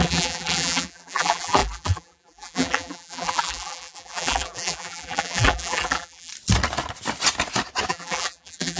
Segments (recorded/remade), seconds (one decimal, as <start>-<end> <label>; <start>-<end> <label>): 0.0-6.3 remade; 6.3-7.9 recorded; 7.9-8.8 remade